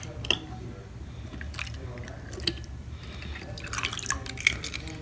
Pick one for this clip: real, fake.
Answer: real